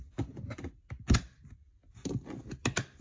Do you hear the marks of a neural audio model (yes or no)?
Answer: no